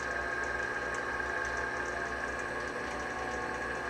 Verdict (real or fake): real